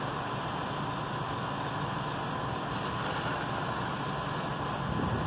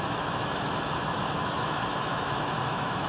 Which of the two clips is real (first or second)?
first